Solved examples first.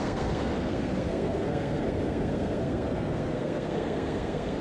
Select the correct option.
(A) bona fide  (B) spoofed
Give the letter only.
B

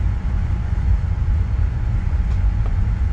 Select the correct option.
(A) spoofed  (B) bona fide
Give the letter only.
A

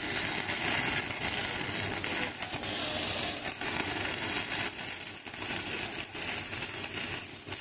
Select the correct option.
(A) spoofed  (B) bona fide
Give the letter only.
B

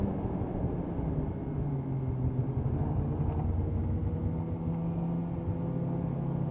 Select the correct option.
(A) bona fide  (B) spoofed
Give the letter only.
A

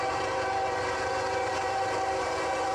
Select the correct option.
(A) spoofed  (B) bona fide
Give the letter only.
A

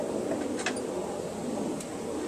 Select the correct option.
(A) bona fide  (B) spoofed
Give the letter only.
A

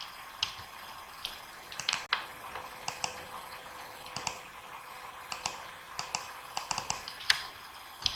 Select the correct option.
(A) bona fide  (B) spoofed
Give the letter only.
A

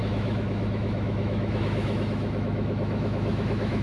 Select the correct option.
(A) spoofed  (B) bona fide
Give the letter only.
A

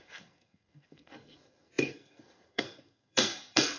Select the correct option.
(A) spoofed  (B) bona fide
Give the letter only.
A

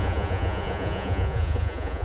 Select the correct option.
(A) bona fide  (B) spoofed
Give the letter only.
B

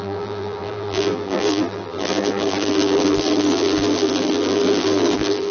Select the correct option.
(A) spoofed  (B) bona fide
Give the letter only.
A